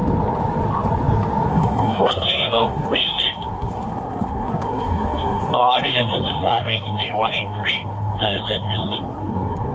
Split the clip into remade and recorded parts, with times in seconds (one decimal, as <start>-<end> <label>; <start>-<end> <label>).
0.0-1.5 recorded; 1.5-9.7 remade